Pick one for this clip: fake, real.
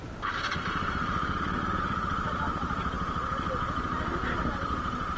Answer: real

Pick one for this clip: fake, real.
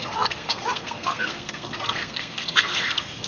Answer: fake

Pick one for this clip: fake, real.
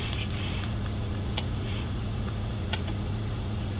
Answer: fake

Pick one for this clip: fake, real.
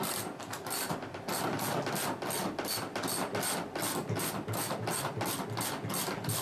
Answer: real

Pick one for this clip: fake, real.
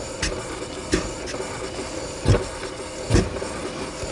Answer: real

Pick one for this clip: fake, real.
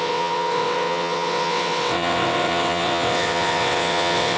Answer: fake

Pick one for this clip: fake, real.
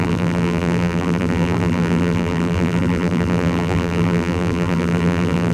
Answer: fake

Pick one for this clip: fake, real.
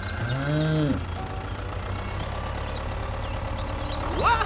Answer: real